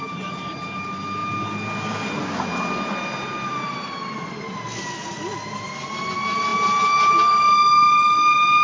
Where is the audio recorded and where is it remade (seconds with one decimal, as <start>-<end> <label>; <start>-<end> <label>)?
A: 0.0-8.6 recorded